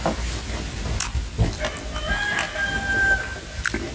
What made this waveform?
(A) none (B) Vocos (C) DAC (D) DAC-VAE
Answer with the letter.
A